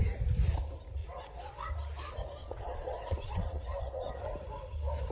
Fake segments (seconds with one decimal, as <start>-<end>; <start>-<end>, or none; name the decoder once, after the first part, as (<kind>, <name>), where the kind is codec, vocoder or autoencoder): 1.0-1.7 (vocoder, Vocos); 2.4-4.2